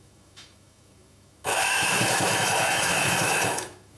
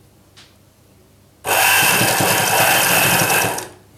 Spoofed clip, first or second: first